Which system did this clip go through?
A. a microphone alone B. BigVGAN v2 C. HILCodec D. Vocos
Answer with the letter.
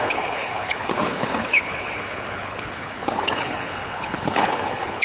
C